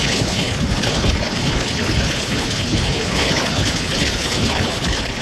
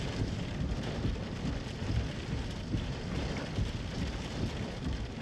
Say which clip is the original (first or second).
second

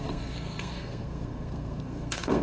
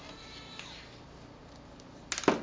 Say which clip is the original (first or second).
second